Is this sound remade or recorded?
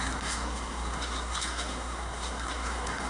remade